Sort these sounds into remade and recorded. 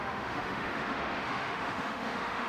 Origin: remade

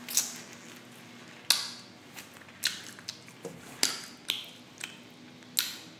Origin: recorded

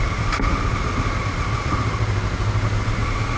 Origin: recorded